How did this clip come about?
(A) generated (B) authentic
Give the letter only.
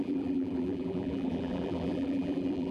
A